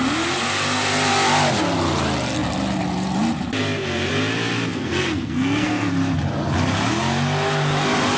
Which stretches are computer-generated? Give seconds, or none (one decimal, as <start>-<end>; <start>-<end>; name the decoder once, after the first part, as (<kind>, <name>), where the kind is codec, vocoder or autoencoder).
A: 4.7-5.9 (codec, SNAC)